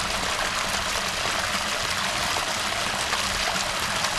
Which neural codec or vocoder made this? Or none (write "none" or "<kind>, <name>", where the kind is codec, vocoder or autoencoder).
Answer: none